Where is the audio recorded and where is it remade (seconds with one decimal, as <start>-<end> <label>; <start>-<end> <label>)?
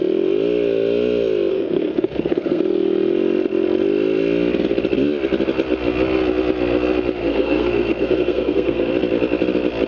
0.0-1.5 recorded; 1.5-2.6 remade; 2.6-7.2 recorded; 7.2-8.9 remade; 8.9-9.9 recorded